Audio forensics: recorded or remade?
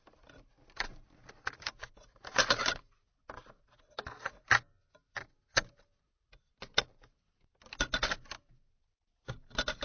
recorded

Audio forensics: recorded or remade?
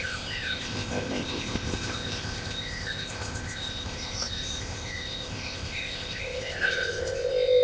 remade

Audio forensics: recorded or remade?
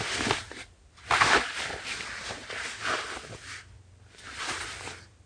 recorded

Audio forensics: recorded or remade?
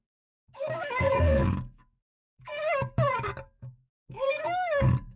remade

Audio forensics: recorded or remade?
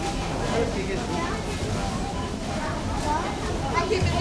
recorded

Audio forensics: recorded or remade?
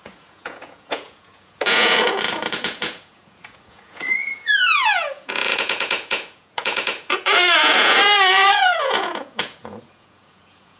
remade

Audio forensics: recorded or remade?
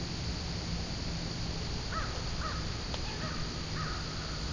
recorded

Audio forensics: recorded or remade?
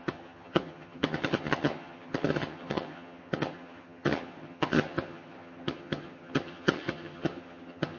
remade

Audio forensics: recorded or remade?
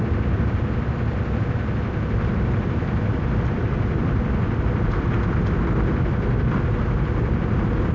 recorded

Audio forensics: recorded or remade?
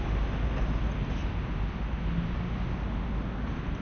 recorded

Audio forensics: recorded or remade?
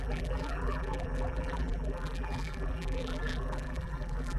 remade